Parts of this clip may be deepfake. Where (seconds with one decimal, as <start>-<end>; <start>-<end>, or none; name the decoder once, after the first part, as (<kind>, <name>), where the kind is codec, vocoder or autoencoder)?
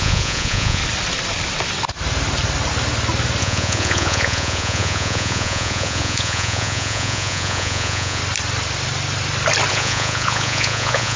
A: 0.0-0.8 (vocoder, Vocos); 3.4-8.2; 9.7-11.2